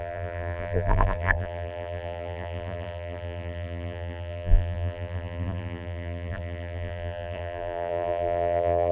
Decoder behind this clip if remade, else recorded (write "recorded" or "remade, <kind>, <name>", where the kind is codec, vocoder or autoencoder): remade, vocoder, BigVGAN v2